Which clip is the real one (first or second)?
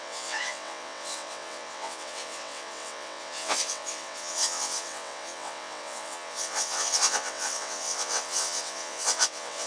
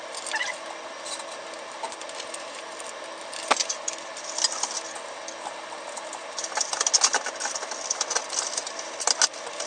second